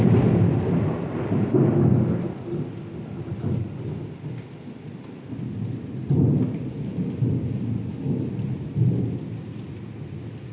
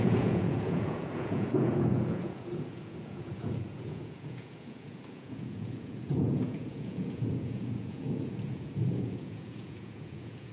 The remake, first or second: second